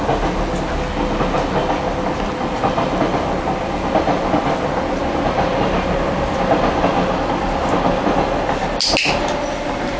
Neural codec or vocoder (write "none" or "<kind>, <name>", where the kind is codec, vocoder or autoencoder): none